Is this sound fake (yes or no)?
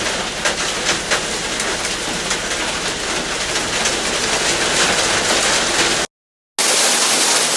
no